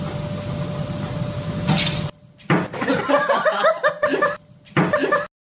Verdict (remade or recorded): recorded